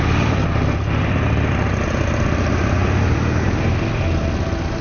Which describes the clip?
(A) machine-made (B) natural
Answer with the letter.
B